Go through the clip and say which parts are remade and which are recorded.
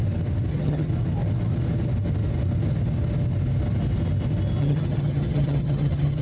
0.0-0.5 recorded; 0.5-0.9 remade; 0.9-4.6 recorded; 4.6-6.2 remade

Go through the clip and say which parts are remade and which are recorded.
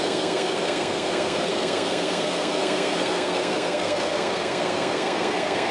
0.0-5.7 remade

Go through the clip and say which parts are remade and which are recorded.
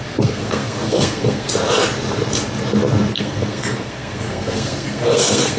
0.0-1.5 remade; 1.5-3.1 recorded; 3.1-5.6 remade